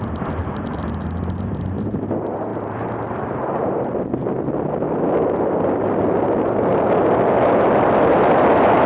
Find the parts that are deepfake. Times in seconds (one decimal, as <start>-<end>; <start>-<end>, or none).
0.4-1.9; 2.5-3.7